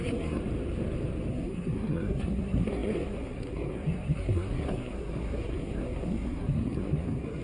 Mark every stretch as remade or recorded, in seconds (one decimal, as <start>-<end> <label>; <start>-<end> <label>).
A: 0.0-0.4 remade; 0.4-1.3 recorded; 1.3-7.4 remade